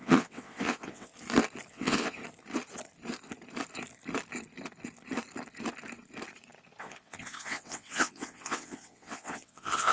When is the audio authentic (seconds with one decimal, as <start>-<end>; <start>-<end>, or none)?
1.1-1.7; 2.2-6.8